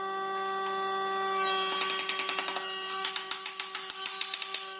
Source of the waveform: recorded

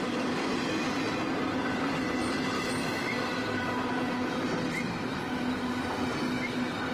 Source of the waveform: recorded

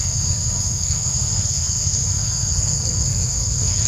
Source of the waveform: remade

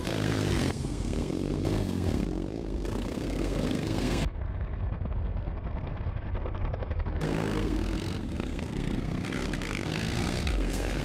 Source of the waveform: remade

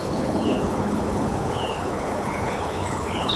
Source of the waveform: remade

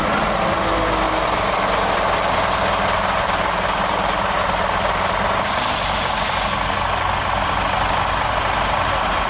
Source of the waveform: recorded